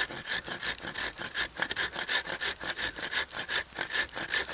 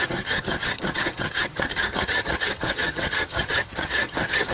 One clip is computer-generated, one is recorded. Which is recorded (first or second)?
first